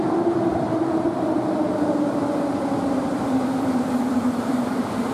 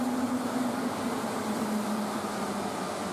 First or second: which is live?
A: second